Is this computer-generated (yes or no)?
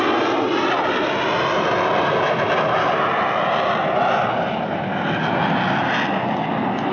no